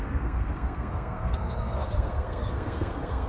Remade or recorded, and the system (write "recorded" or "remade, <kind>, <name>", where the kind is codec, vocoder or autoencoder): remade, codec, SNAC